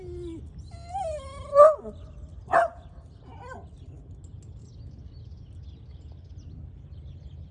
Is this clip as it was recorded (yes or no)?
yes